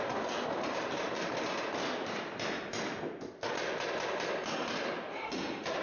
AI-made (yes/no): no